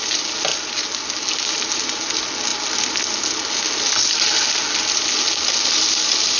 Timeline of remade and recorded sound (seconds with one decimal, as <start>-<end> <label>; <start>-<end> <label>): 0.0-6.4 recorded